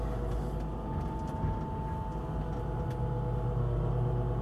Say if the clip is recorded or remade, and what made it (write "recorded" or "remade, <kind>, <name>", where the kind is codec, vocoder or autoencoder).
recorded